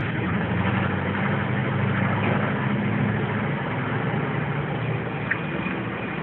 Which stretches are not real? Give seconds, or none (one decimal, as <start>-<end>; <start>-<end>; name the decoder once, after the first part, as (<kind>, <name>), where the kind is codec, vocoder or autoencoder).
0.0-0.5 (codec, HILCodec)